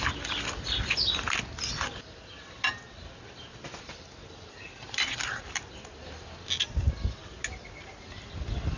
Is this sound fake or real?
real